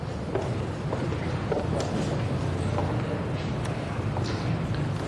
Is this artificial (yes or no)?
no